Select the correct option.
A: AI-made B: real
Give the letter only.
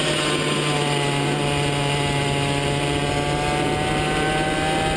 B